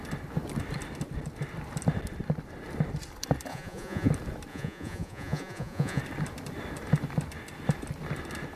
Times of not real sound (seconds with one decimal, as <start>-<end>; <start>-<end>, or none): 3.5-4.1; 4.5-6.0